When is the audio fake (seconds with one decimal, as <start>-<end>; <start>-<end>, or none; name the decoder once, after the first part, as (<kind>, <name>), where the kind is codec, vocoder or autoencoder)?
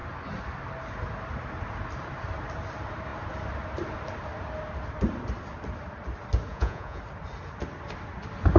6.5-7.0 (vocoder, Vocos)